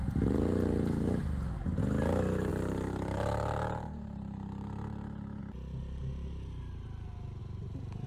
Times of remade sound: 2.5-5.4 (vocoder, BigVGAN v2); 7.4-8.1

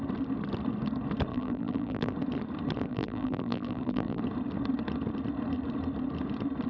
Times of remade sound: 1.3-2.1 (vocoder, BigVGAN v2); 2.9-4.2

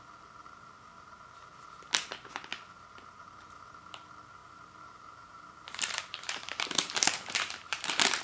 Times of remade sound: 4.4-8.2 (vocoder, BigVGAN v2)

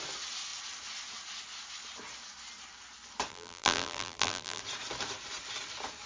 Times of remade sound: 3.3-4.6 (vocoder, BigVGAN v2)

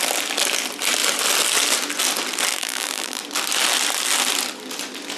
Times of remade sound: 2.5-3.2 (vocoder, BigVGAN v2)

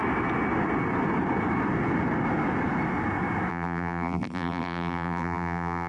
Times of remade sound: 3.5-5.9 (vocoder, BigVGAN v2)

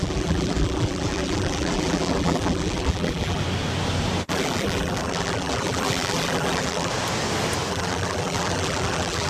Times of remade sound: 0.0-3.4 (vocoder, BigVGAN v2); 4.3-6.9; 7.7-9.3

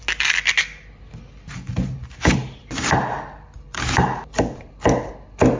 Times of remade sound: 1.7-5.1 (vocoder, BigVGAN v2)